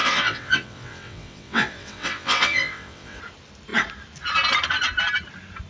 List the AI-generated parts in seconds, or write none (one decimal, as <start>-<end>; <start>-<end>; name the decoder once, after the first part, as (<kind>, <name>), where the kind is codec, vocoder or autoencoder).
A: 0.0-3.2 (vocoder, WaveNeXt)